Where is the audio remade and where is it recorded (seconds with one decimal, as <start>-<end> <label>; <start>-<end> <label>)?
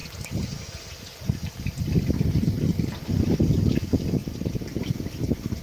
0.0-4.2 recorded; 4.2-4.8 remade; 4.8-5.6 recorded